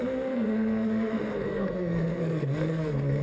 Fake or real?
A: fake